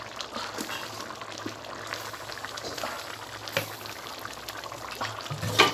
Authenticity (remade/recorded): recorded